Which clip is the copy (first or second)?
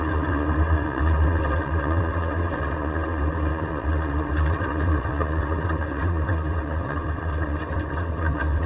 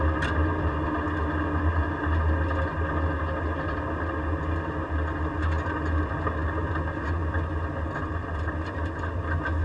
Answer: first